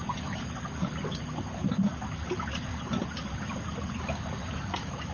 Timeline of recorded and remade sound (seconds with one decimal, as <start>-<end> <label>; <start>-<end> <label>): 0.0-5.1 recorded